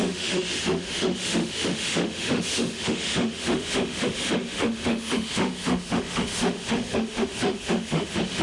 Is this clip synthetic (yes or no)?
yes